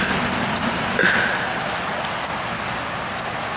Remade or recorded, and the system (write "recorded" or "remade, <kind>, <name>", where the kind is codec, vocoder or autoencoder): recorded